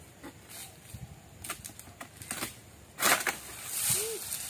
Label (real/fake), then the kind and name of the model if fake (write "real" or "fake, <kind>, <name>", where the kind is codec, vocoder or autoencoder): real